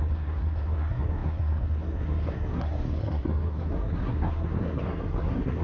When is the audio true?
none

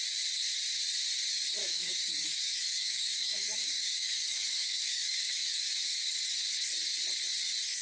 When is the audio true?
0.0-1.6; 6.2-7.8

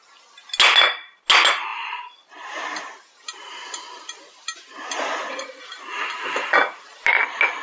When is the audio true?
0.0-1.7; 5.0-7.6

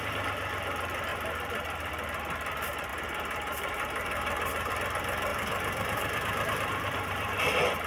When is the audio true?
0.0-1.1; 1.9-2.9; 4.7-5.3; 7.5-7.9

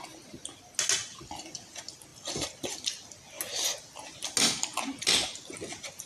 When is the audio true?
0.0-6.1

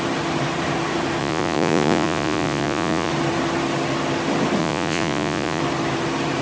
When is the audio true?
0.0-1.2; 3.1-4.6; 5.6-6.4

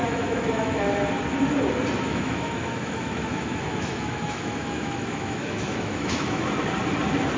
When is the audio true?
0.8-2.1; 6.5-7.4

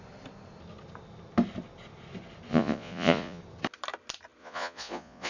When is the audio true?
0.0-2.5; 3.4-4.4